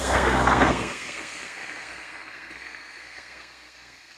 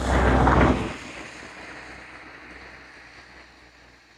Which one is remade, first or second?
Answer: first